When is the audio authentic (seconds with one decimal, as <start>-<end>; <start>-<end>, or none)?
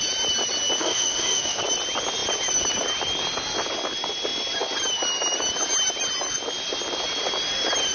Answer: 0.0-0.8; 1.6-7.9